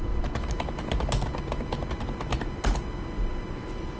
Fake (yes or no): no